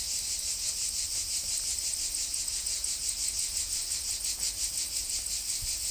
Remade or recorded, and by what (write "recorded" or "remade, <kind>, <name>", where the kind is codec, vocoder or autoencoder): recorded